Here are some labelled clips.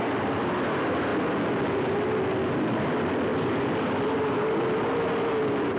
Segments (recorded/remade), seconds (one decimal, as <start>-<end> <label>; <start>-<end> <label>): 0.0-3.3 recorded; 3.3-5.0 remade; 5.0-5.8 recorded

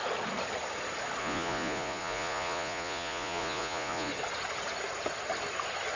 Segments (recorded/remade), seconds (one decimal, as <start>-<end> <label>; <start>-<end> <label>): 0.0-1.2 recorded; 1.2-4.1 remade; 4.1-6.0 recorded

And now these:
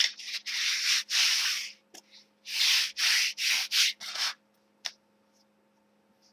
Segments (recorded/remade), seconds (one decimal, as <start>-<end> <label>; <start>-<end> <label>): 0.0-6.3 recorded

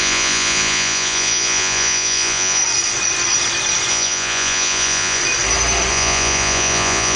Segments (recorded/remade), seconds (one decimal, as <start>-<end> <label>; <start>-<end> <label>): 0.0-2.6 remade; 2.6-3.9 recorded; 3.9-5.2 remade; 5.2-5.9 recorded; 5.9-7.2 remade

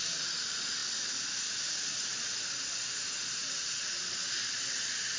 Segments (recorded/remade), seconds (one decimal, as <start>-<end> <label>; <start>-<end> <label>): 0.0-5.2 recorded